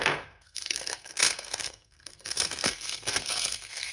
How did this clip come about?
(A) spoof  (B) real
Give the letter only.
A